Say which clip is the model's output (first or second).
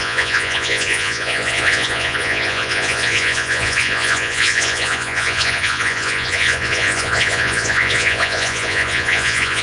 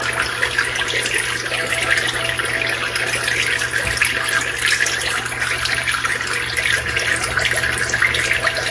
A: first